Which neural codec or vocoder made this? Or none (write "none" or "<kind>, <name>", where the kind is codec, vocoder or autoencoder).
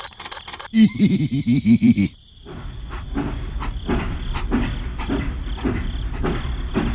vocoder, BigVGAN v2